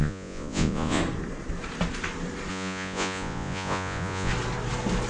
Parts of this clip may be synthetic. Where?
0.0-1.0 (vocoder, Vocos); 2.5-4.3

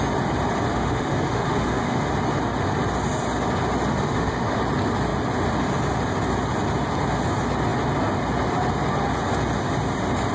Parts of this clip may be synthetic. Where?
0.7-2.1 (autoencoder, DAC-VAE); 3.9-4.6